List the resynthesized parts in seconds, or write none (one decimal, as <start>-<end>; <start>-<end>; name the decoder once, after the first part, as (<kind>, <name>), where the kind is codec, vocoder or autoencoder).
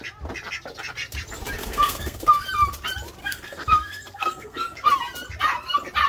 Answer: 1.6-2.4 (codec, SNAC); 3.2-4.9